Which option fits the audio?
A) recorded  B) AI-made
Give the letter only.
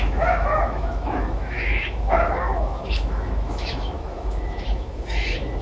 B